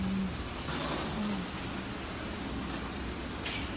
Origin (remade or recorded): recorded